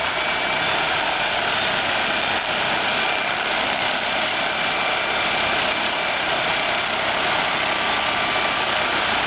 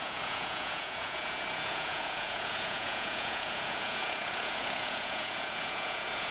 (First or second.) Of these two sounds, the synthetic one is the second